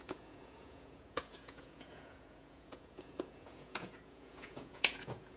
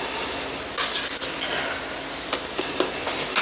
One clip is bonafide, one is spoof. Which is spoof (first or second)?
first